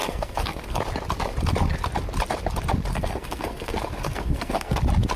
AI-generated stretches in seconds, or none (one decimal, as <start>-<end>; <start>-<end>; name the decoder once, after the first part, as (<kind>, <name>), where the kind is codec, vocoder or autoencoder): 0.0-0.8 (codec, SNAC); 2.9-4.8